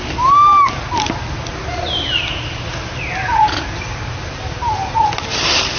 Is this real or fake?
real